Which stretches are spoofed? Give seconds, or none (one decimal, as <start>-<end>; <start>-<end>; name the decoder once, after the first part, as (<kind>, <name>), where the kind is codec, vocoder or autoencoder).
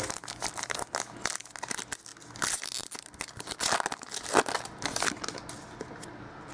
none